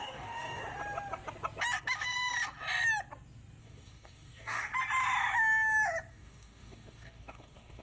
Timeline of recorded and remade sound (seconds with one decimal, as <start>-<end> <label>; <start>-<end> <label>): 0.0-0.6 remade; 0.6-3.6 recorded; 3.6-4.7 remade; 4.7-6.1 recorded; 6.1-7.8 remade